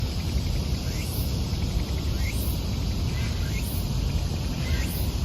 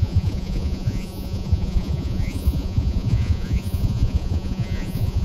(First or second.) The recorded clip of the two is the first